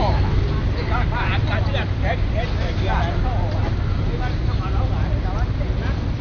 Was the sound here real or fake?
real